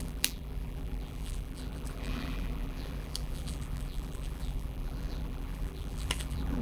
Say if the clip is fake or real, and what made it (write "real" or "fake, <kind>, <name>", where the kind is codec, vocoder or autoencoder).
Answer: fake, vocoder, BigVGAN v2